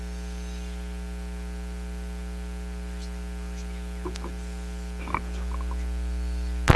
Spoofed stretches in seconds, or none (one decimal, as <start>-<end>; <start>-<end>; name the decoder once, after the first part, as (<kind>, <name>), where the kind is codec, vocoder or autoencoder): none